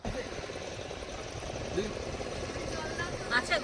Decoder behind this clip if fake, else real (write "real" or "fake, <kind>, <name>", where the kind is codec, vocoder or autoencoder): fake, vocoder, BigVGAN v2